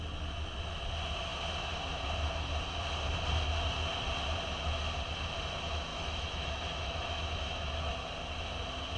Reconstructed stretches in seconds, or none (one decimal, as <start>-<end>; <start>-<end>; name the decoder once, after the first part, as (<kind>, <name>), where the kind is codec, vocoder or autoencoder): 5.9-7.9 (autoencoder, DAC-VAE)